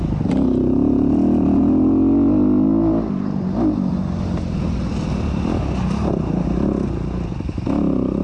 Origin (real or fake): real